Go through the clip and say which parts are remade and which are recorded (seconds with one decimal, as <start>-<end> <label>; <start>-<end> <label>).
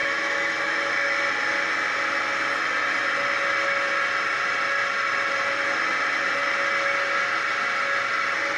0.0-0.9 remade; 0.9-8.6 recorded